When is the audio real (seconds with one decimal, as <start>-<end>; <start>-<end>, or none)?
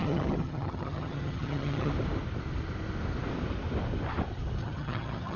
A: 1.9-4.6